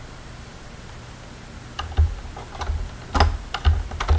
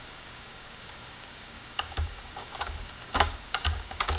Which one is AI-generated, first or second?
second